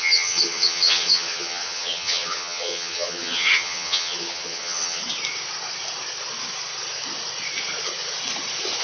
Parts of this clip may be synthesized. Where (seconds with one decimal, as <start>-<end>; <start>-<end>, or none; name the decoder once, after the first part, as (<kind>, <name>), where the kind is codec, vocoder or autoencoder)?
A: 0.0-5.0 (vocoder, HiFi-GAN)